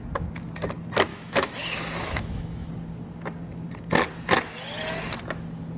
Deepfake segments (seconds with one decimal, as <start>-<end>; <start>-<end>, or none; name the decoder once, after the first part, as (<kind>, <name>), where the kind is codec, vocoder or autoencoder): 1.1-2.7 (autoencoder, DAC-VAE)